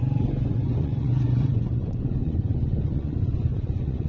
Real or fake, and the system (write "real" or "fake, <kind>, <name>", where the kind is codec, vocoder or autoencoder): fake, vocoder, Vocos